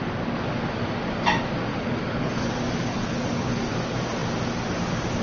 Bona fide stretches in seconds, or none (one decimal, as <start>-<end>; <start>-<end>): 0.0-1.7; 2.5-2.9; 3.6-5.2